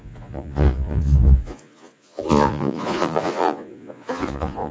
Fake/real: fake